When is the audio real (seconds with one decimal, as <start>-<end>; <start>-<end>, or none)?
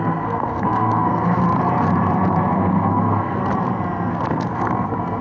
1.4-2.5; 3.4-4.1